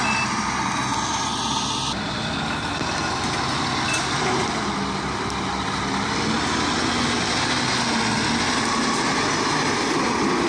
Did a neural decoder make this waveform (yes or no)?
no